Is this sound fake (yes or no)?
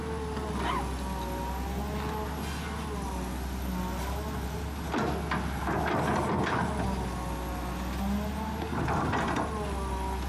no